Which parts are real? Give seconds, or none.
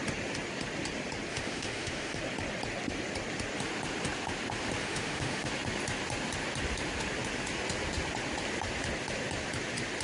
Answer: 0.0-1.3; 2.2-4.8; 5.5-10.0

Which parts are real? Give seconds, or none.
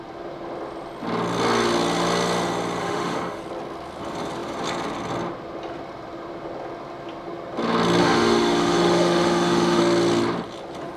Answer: 0.0-2.8; 3.4-8.0; 9.8-11.0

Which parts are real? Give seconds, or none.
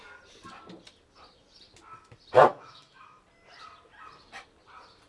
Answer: 0.0-2.5; 3.2-5.1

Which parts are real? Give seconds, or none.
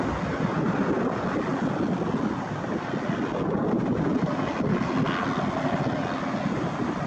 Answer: 0.0-7.1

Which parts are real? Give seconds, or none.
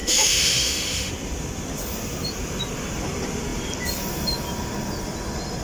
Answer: 1.1-5.6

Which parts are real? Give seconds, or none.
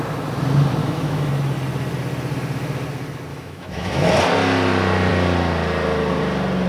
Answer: 0.0-0.8; 1.3-3.3; 4.1-6.7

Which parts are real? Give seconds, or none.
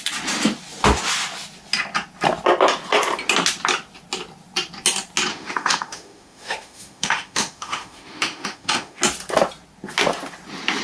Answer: 0.0-5.3; 9.0-10.8